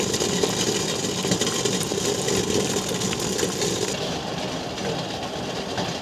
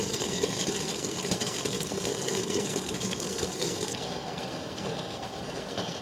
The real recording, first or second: first